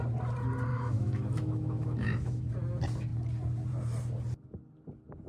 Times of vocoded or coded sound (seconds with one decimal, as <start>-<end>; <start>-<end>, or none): 0.7-2.5